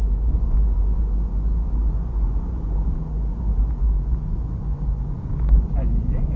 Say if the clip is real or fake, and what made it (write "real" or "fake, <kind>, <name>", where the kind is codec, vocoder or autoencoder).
fake, vocoder, Vocos